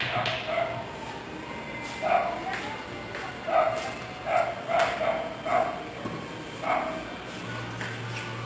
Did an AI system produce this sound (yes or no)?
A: no